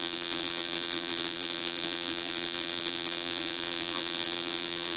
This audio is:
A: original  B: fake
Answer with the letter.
B